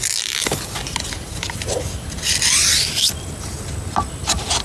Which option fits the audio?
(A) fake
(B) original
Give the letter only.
B